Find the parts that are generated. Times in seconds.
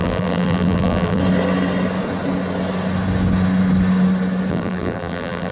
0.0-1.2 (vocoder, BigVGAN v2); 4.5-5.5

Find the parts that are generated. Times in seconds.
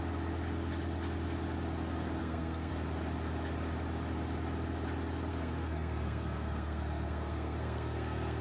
2.2-2.7 (codec, SNAC); 5.3-8.4